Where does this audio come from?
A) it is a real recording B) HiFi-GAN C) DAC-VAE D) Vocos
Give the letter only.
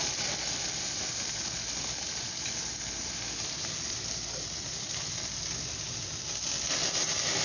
A